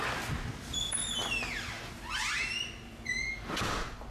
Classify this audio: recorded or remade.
recorded